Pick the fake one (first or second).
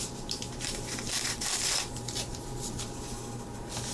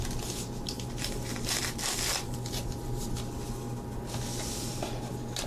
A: first